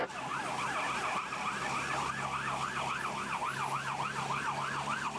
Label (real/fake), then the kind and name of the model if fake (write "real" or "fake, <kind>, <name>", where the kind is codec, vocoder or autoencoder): real